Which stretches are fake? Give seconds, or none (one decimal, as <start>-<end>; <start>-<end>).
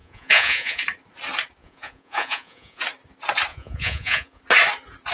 0.0-0.8; 1.6-2.8; 3.5-4.4